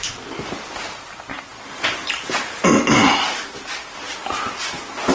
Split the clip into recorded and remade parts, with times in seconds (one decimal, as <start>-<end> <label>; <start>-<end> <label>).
0.0-5.1 remade